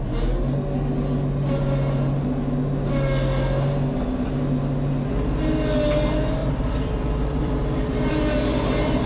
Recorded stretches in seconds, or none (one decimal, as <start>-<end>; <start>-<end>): 0.0-6.4